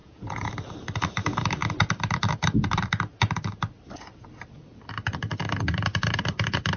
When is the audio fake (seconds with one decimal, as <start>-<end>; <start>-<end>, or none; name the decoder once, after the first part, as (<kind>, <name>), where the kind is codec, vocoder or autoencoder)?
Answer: 0.0-0.5 (vocoder, Vocos)